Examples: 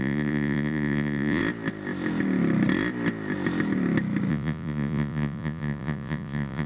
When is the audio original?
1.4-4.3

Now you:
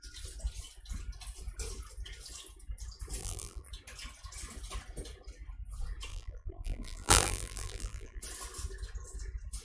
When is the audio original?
0.0-3.2; 3.7-6.1; 8.2-9.6

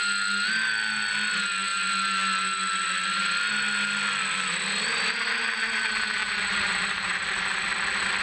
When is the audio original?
0.0-6.2; 7.6-8.2

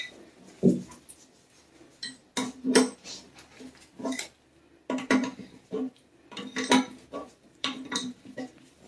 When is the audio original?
0.0-7.2; 8.4-8.9

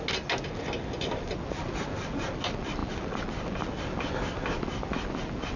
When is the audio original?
0.0-5.6